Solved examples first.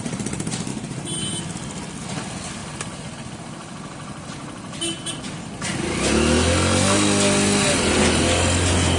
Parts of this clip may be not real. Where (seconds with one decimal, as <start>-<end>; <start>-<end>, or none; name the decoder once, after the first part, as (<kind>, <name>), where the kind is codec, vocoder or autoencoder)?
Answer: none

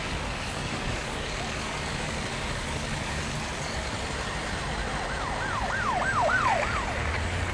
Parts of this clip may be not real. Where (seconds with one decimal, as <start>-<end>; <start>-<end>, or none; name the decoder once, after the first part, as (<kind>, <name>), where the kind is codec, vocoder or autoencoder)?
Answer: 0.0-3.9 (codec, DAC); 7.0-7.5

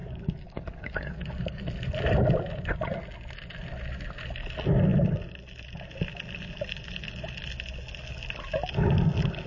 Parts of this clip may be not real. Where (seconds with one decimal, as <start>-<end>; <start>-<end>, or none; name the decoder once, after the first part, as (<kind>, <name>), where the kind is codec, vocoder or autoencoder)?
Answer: 0.0-1.6 (codec, DAC)

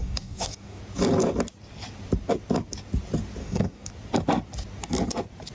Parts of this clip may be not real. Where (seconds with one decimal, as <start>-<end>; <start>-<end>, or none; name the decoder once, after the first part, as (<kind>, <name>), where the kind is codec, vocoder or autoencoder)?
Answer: 0.0-0.8 (codec, DAC); 3.4-3.9

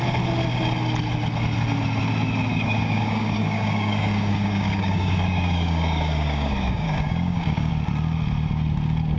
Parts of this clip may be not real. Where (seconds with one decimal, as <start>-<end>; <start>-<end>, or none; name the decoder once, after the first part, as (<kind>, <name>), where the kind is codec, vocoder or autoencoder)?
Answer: 2.5-7.7 (codec, DAC)